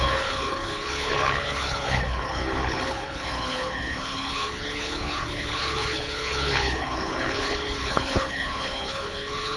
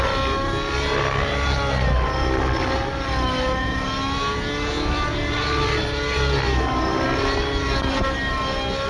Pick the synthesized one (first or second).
first